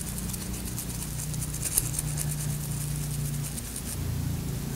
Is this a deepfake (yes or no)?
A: no